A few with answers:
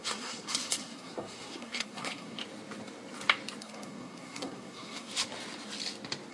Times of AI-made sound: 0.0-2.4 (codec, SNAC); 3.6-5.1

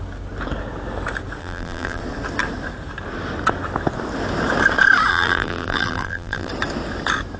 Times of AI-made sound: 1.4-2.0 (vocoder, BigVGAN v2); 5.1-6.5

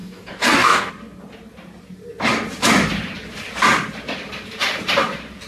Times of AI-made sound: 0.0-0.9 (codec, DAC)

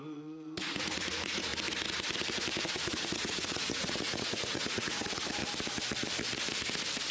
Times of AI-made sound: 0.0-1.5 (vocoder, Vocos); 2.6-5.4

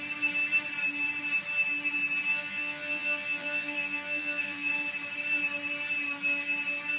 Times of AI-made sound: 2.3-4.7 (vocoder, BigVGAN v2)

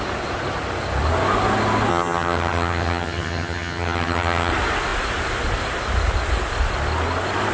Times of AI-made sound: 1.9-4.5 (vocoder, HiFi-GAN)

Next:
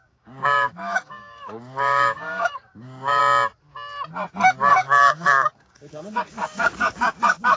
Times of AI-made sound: 0.0-3.2 (codec, DAC); 4.7-7.6

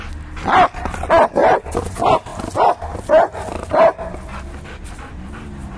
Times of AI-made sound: 1.4-1.9 (vocoder, BigVGAN v2)